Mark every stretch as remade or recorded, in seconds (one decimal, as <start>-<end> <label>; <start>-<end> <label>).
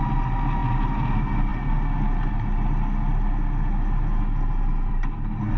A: 0.0-5.6 recorded